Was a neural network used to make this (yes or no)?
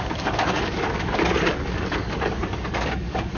yes